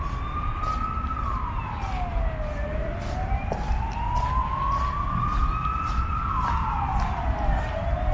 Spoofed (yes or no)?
no